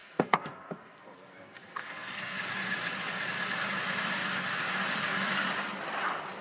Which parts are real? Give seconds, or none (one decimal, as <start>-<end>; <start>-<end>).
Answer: 2.4-6.4